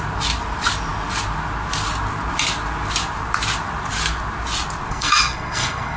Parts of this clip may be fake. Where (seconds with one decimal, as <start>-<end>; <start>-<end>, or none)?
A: 4.9-6.0